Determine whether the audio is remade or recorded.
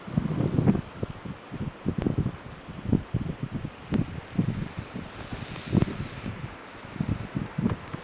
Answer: recorded